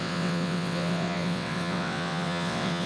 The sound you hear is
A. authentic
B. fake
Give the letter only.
B